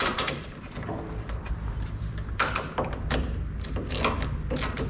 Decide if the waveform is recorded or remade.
remade